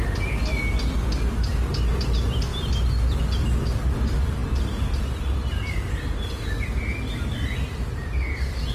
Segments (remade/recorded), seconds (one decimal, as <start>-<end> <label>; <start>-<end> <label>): 0.0-8.7 recorded